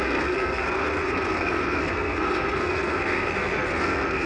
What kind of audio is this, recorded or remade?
remade